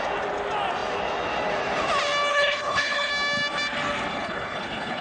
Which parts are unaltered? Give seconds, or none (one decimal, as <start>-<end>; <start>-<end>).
0.0-2.3; 3.1-4.1